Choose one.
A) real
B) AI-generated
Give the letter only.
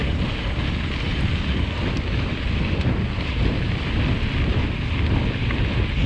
A